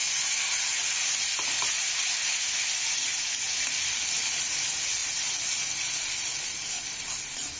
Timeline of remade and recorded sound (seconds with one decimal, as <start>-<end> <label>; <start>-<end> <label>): 0.0-7.6 recorded